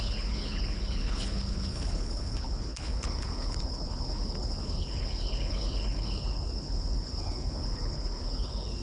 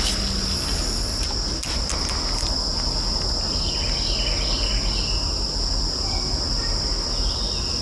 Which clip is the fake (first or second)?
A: first